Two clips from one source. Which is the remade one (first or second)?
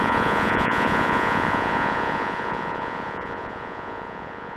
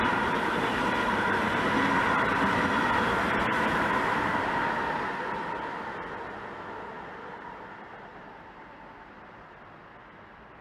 first